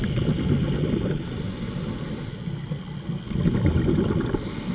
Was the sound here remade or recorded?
recorded